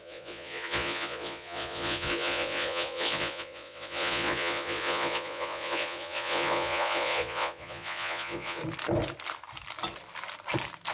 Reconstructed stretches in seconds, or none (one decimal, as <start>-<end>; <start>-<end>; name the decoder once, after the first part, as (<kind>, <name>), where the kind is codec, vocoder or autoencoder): 0.0-8.6 (vocoder, Vocos)